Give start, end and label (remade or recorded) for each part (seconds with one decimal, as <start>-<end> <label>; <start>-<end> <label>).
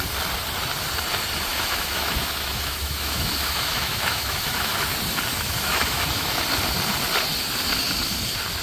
0.0-1.5 recorded; 1.5-4.7 remade; 4.7-5.3 recorded; 5.3-6.4 remade; 6.4-8.6 recorded